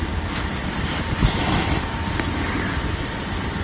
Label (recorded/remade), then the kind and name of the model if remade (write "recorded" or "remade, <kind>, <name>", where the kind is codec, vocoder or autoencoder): recorded